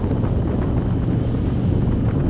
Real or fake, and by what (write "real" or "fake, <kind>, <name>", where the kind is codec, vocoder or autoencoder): real